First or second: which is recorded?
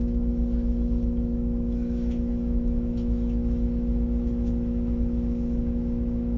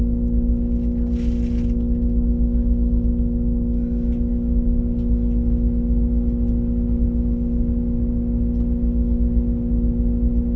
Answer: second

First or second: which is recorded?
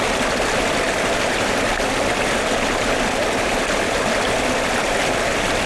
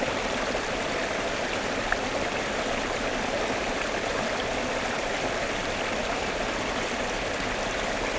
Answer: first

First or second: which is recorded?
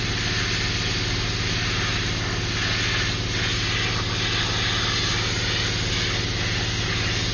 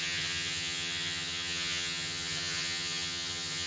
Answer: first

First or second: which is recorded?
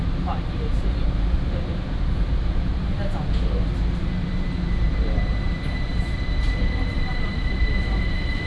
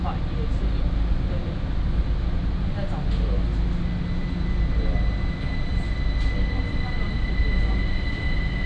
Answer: second